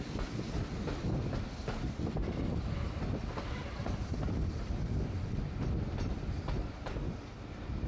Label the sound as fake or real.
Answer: real